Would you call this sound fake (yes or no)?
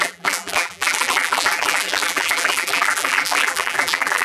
yes